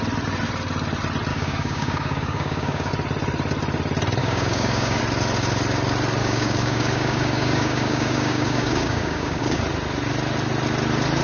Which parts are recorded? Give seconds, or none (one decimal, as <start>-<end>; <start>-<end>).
0.0-1.3; 2.9-4.2; 5.0-6.2; 9.6-11.2